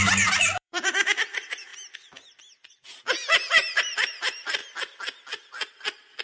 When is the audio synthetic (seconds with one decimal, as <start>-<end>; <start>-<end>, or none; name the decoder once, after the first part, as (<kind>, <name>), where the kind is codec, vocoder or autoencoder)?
0.0-1.7 (vocoder, BigVGAN v2); 3.5-4.6; 5.7-6.2